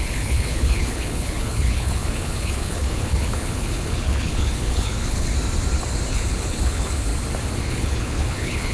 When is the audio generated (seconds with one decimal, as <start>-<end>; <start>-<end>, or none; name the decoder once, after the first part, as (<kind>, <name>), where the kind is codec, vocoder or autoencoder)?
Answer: 0.0-5.3 (codec, HILCodec); 6.1-7.1; 7.7-8.7